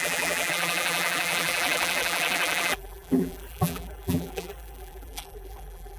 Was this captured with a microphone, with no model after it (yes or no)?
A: no